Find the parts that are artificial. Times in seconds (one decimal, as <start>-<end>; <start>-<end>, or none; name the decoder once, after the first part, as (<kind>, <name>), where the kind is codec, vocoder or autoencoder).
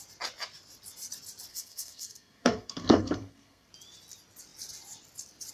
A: 1.5-3.7 (codec, SNAC)